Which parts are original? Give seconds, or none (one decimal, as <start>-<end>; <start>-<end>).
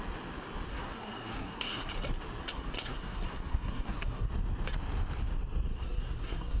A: 0.0-0.7; 1.9-2.4; 4.3-5.7